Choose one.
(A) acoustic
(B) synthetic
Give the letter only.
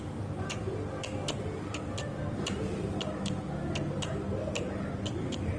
A